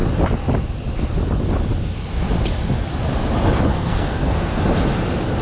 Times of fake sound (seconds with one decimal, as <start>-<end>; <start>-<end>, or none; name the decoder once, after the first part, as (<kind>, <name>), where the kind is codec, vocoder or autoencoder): 3.7-4.6 (codec, SNAC)

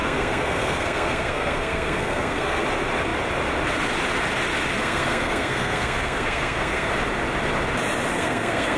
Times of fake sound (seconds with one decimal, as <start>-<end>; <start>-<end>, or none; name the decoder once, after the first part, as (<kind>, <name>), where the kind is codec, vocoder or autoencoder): 0.0-2.6 (codec, SNAC); 4.8-6.9; 8.1-8.8

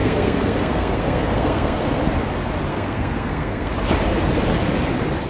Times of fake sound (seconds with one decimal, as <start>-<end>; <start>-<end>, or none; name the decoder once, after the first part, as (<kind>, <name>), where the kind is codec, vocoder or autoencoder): 0.0-2.0 (codec, SNAC); 2.7-3.7

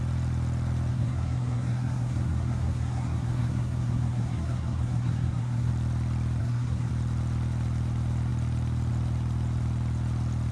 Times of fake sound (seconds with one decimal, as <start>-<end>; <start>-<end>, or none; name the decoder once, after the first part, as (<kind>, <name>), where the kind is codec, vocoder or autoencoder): 0.9-5.7 (codec, SNAC); 6.4-6.9

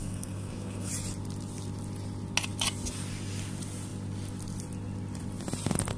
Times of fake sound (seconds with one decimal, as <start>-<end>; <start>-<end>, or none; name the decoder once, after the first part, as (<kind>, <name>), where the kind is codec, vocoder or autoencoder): 0.0-0.9 (codec, SNAC)

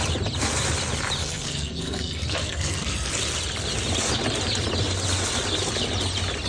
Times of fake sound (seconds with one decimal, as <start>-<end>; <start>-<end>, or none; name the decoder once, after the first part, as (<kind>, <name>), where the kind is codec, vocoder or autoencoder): 1.2-3.1 (codec, SNAC)